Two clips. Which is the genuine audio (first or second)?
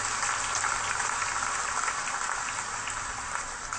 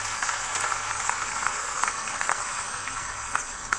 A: first